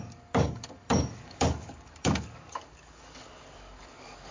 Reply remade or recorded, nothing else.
remade